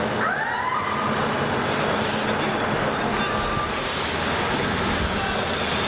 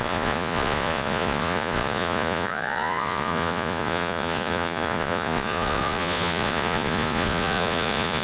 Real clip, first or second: first